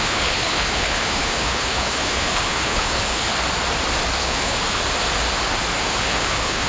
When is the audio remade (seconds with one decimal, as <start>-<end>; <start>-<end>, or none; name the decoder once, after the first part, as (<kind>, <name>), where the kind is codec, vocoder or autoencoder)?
0.0-3.3 (codec, HILCodec); 4.2-4.8; 5.8-6.7